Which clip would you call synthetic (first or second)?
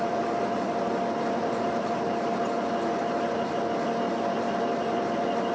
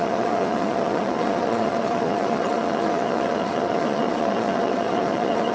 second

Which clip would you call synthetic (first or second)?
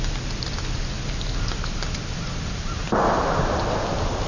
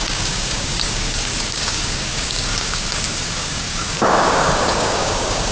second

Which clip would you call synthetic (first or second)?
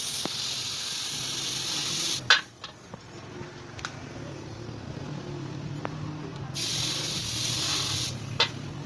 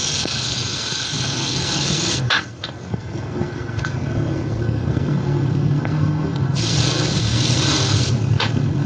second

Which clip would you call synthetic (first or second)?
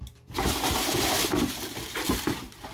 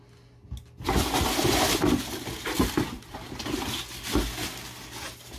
first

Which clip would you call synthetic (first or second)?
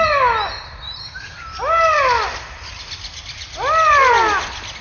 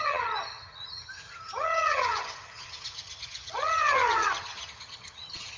second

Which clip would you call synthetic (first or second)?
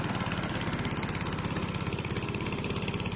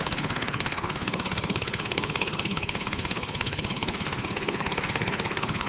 second